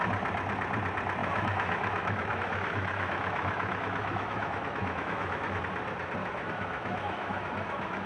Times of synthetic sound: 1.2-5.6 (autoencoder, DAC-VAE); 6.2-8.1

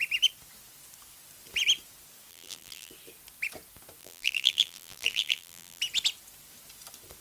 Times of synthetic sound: 2.3-2.9 (vocoder, BigVGAN v2); 4.0-5.8

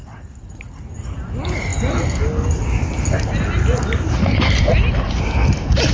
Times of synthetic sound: none

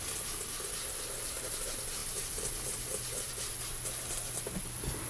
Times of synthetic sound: 2.0-3.3 (vocoder, BigVGAN v2)

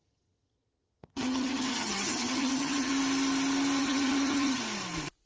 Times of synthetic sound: 0.0-2.9 (vocoder, HiFi-GAN); 3.8-4.6

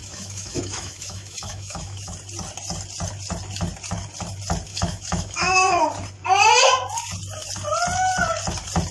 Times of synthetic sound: 0.0-2.1 (autoencoder, DAC-VAE); 4.7-5.9

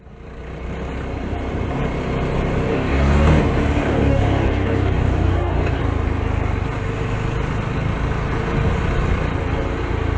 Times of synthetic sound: 2.7-3.4 (codec, DAC); 3.8-5.8